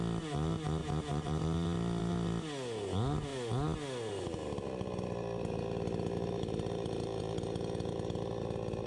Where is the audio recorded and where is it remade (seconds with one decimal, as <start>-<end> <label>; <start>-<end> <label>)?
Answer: 0.0-0.8 recorded; 0.8-2.0 remade; 2.0-8.9 recorded